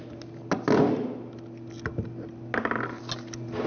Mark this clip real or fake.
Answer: real